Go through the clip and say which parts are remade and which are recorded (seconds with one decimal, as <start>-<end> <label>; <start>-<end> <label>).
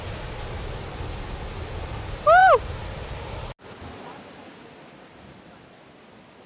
0.0-6.5 recorded